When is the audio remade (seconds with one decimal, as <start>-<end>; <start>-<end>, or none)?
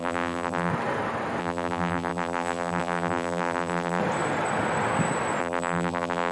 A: 0.0-0.7; 1.4-4.0; 5.4-6.3